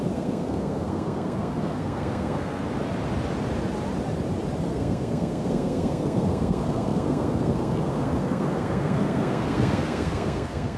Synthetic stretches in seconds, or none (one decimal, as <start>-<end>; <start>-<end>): 0.0-2.6; 4.7-10.8